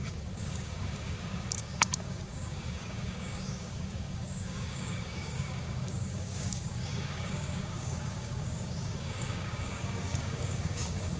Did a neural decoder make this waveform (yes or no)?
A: yes